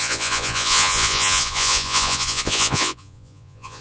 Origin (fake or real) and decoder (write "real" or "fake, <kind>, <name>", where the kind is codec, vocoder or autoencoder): fake, vocoder, Vocos